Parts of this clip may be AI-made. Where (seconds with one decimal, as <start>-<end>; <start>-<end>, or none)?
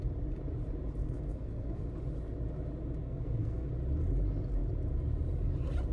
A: 1.0-1.9; 3.0-3.7